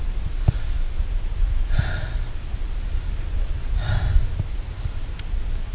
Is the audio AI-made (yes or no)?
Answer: no